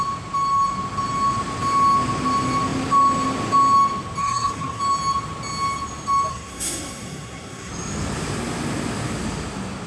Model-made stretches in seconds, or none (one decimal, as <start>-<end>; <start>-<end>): 4.2-4.8; 6.3-7.7